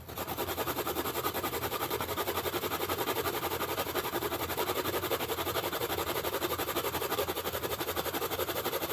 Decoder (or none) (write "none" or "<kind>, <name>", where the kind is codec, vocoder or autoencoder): none